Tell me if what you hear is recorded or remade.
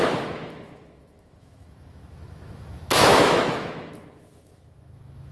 remade